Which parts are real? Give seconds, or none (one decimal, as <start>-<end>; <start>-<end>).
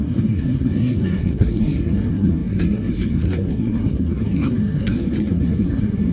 none